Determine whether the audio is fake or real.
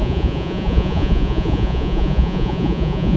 fake